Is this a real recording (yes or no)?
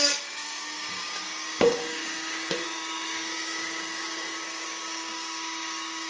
no